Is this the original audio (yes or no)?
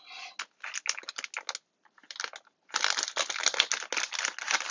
yes